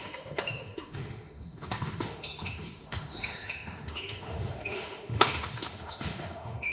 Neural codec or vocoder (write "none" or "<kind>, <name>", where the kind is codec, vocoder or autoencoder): autoencoder, DAC-VAE